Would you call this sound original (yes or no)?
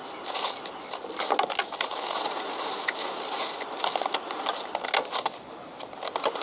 yes